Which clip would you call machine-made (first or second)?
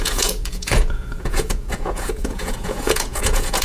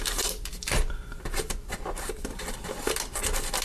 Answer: first